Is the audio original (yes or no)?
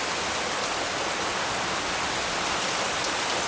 yes